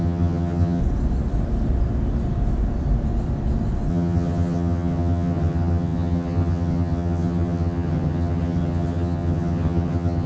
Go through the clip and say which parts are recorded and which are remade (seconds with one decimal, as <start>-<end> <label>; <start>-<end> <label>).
0.0-0.8 remade; 0.8-3.9 recorded; 3.9-10.3 remade